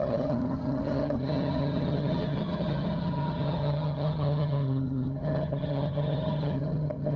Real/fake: fake